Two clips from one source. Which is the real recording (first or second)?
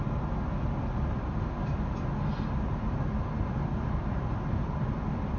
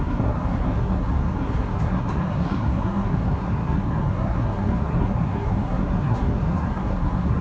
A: first